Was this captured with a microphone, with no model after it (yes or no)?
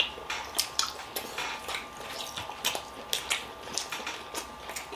yes